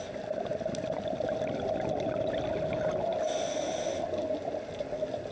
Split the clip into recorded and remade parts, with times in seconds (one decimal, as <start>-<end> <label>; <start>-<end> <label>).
0.0-5.3 recorded